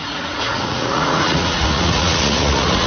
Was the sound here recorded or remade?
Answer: remade